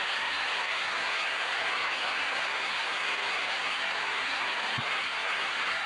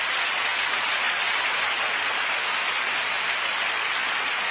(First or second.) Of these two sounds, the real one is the second